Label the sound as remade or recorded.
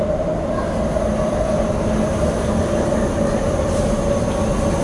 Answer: recorded